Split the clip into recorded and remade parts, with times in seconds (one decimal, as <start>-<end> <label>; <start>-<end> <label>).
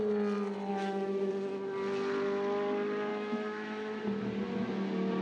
0.0-0.7 recorded; 0.7-1.3 remade; 1.3-3.1 recorded; 3.1-4.0 remade; 4.0-5.2 recorded